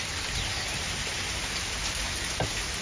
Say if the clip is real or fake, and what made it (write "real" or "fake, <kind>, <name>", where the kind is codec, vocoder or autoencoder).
real